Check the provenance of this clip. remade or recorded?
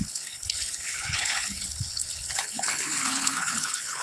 remade